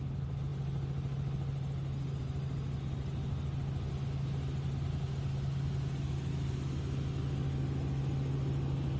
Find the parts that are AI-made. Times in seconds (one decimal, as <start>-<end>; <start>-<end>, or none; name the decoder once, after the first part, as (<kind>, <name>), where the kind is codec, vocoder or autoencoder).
none